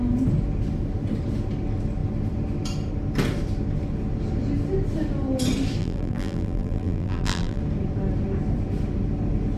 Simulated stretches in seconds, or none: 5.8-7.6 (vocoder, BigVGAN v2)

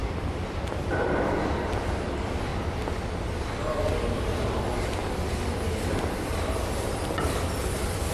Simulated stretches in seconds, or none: 0.8-2.5 (vocoder, BigVGAN v2); 3.9-8.1